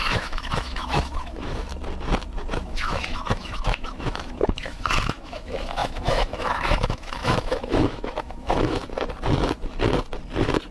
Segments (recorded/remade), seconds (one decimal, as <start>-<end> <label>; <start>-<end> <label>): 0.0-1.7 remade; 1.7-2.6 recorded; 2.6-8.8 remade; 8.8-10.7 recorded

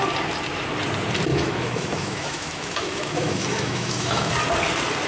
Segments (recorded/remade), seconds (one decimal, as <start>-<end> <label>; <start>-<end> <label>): 0.0-1.3 recorded; 1.3-4.3 remade; 4.3-5.1 recorded

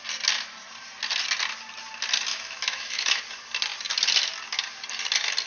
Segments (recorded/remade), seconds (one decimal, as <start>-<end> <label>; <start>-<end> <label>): 0.0-2.3 recorded; 2.3-3.2 remade; 3.2-5.5 recorded

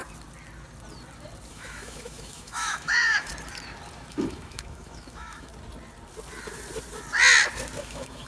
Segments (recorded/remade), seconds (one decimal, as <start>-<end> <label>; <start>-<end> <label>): 0.0-1.5 recorded; 1.5-3.3 remade; 3.3-4.1 recorded; 4.1-5.5 remade; 5.5-7.8 recorded; 7.8-8.3 remade

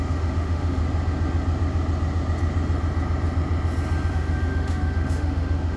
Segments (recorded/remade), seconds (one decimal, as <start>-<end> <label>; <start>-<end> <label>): 0.0-0.8 remade; 0.8-4.1 recorded; 4.1-5.8 remade

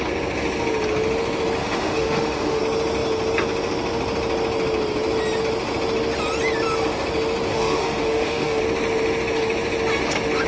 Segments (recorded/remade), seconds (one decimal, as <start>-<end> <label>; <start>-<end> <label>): 0.0-1.6 recorded; 1.6-2.6 remade; 2.6-7.5 recorded; 7.5-8.6 remade; 8.6-10.5 recorded

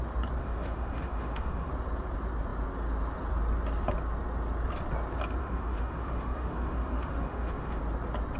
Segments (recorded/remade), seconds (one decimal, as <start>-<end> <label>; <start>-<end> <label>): 0.0-0.4 recorded; 0.4-1.7 remade; 1.7-5.4 recorded; 5.4-7.8 remade; 7.8-8.4 recorded

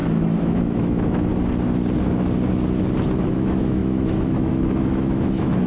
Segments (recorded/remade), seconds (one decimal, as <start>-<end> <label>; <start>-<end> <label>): 0.0-1.3 remade; 1.3-3.2 recorded; 3.2-5.7 remade